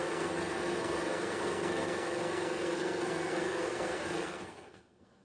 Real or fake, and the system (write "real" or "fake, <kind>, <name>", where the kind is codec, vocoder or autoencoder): fake, codec, SNAC